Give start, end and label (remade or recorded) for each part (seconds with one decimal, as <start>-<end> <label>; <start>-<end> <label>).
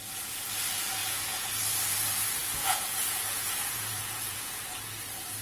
0.0-1.0 recorded; 1.0-1.5 remade; 1.5-2.4 recorded; 2.4-4.6 remade; 4.6-5.4 recorded